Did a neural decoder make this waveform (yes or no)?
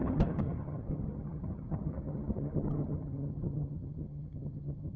yes